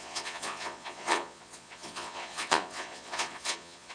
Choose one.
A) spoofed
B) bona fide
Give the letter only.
A